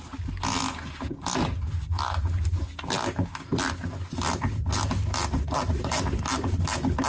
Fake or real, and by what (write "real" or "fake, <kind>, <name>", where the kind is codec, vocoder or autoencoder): real